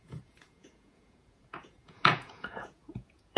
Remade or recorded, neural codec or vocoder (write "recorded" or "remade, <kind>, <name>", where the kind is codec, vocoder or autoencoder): remade, vocoder, Vocos